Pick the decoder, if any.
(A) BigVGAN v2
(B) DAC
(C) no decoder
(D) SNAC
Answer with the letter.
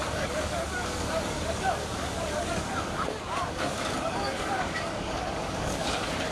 B